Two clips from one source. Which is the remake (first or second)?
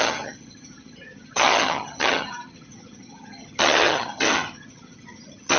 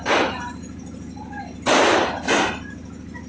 first